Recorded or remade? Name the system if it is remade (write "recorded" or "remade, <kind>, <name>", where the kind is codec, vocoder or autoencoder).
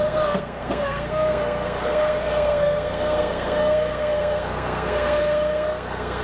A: remade, codec, SNAC